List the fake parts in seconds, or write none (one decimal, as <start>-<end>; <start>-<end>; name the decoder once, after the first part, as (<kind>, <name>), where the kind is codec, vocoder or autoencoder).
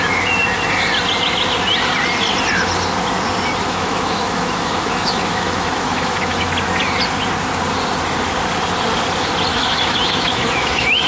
3.6-6.5 (autoencoder, DAC-VAE); 9.5-11.1